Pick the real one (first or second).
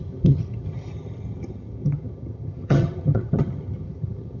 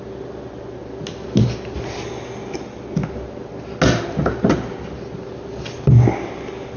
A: second